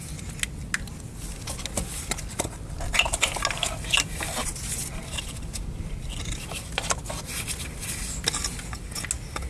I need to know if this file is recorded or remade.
recorded